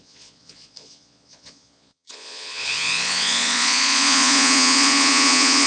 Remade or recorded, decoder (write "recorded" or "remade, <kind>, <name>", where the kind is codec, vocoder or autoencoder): remade, vocoder, Vocos